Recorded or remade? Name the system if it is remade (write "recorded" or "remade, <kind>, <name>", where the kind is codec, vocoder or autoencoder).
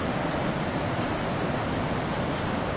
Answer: recorded